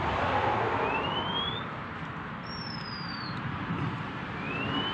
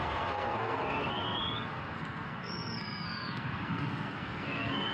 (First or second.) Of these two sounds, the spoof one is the second